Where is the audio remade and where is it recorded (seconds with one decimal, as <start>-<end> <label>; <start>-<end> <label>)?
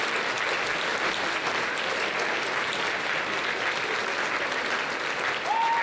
0.0-5.8 recorded